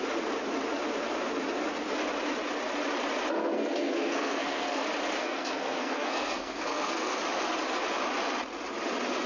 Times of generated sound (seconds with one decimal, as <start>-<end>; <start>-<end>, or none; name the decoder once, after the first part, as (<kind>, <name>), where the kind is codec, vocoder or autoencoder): 3.4-4.8 (codec, SNAC); 5.2-7.2